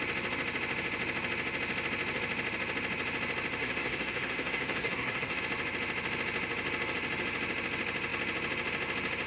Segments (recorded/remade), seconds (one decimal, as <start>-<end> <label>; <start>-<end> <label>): 0.0-3.6 recorded; 3.6-5.4 remade; 5.4-9.3 recorded